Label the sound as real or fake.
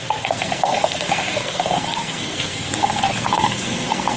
fake